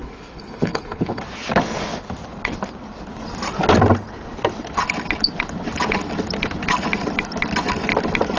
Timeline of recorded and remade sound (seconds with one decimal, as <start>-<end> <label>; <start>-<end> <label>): 0.0-1.2 remade; 1.2-8.4 recorded